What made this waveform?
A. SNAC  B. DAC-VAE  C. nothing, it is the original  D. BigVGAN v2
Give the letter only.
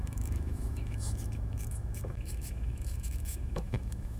B